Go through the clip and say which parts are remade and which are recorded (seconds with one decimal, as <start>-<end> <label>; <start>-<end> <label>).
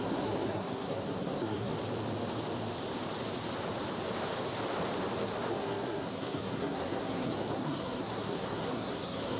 0.0-1.7 remade; 1.7-5.5 recorded; 5.5-9.4 remade